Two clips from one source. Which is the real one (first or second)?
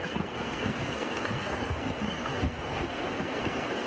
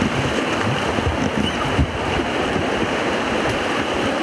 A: second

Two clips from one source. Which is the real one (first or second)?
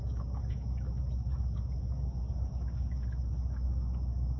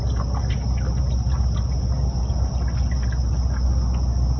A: second